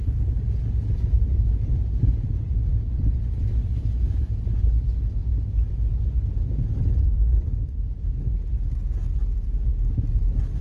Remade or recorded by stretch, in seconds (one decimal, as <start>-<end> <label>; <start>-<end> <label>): 0.0-7.0 recorded; 7.0-8.1 remade; 8.1-10.6 recorded